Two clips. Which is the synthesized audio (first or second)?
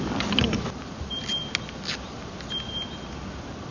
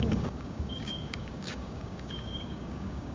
second